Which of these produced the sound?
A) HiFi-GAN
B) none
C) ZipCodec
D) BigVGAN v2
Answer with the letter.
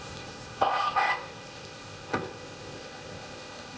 C